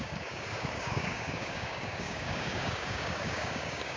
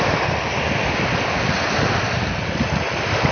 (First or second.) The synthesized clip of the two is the first